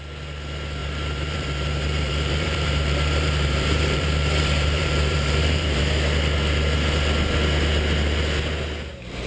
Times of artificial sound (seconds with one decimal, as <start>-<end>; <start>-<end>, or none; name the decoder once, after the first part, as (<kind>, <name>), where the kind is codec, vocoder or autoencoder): 0.8-5.8 (vocoder, BigVGAN v2)